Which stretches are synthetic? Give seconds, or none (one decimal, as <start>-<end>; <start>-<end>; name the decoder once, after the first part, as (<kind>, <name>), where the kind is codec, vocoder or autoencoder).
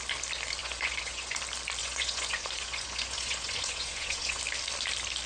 0.6-1.4 (vocoder, Vocos); 1.8-4.4